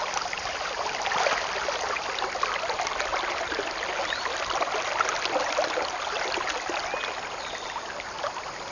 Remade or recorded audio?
recorded